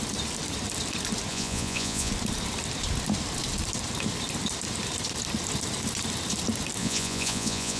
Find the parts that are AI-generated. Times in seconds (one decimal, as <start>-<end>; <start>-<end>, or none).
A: 1.3-2.1; 6.8-7.8